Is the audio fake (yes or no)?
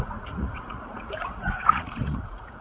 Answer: yes